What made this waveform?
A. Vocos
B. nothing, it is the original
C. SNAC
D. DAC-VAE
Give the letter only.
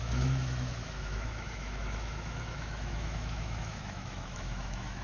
D